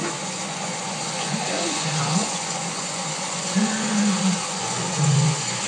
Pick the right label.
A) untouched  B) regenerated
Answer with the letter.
B